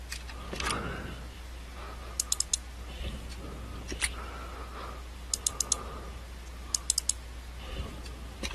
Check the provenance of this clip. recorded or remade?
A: recorded